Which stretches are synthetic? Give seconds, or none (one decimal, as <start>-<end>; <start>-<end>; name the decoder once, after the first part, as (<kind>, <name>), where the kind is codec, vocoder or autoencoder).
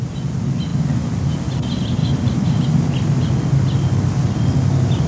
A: 2.0-3.1 (vocoder, BigVGAN v2)